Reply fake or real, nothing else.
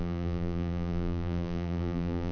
fake